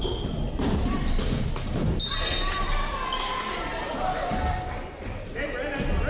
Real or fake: real